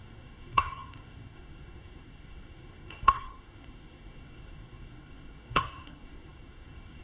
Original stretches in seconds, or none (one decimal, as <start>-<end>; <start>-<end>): none